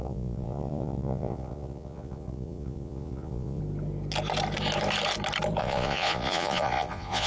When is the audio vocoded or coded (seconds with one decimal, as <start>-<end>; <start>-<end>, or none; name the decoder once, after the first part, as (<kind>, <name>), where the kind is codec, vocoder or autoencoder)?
0.0-3.6 (vocoder, Vocos); 5.6-7.3